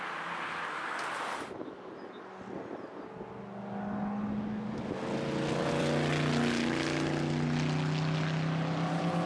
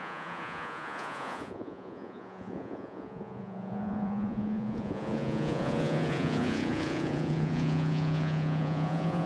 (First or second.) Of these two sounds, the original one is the first